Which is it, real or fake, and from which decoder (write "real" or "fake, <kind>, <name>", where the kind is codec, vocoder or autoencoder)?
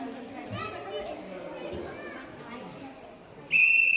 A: real